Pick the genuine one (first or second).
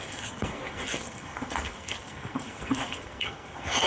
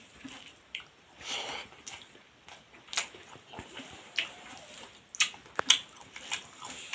second